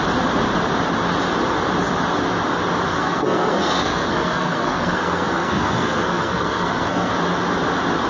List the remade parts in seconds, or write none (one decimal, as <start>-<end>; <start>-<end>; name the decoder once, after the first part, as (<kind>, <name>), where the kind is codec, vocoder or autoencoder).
2.9-7.1 (codec, SNAC)